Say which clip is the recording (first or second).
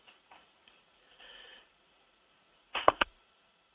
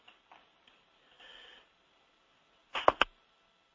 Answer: second